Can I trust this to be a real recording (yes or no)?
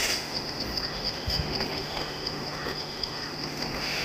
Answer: no